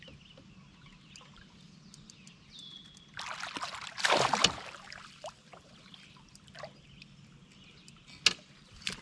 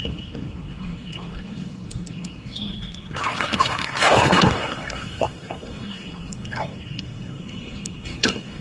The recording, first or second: first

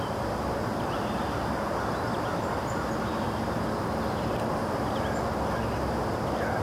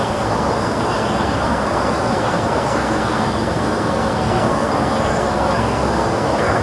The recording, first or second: first